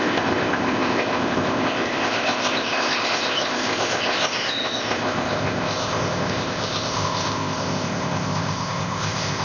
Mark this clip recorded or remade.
remade